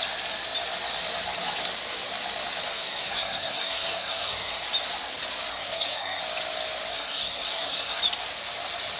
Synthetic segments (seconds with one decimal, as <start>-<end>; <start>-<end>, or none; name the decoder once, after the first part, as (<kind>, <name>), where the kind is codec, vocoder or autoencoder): 2.7-4.6 (codec, SNAC); 5.5-6.2; 6.9-8.0